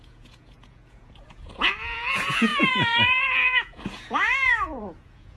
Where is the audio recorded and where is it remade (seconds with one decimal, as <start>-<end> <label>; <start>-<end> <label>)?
0.0-5.4 remade